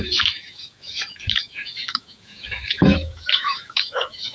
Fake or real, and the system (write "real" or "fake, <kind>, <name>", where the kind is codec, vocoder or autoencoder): fake, autoencoder, DAC-VAE